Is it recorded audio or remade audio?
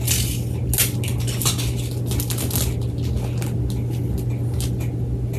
recorded